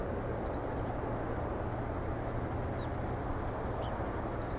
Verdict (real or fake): real